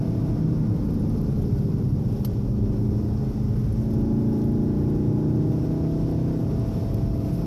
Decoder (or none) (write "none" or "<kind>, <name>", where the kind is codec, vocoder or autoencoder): none